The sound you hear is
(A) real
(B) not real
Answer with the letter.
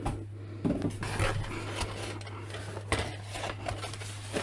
A